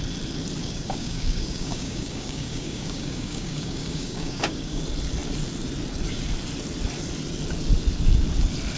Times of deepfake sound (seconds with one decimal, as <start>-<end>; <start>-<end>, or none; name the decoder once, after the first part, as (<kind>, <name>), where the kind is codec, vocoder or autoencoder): 0.6-4.8 (codec, DAC)